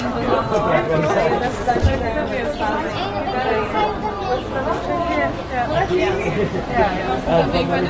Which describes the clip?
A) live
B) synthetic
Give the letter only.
A